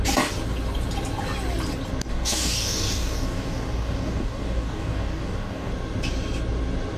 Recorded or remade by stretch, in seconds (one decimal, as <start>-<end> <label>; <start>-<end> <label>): 0.0-2.1 recorded; 2.1-5.7 remade; 5.7-7.0 recorded